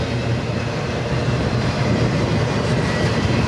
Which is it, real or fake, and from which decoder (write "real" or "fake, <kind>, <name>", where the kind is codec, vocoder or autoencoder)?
fake, vocoder, BigVGAN v2